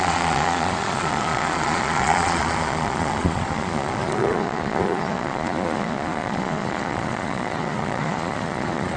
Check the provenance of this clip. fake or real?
fake